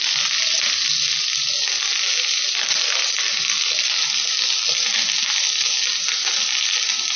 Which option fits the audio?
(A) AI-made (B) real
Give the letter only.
B